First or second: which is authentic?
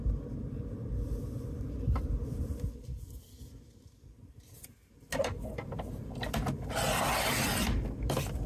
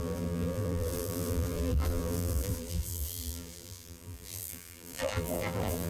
first